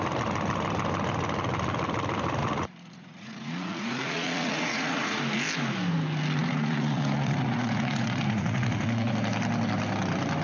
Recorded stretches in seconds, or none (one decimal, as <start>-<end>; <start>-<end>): 0.0-2.4; 5.2-6.4; 9.1-10.4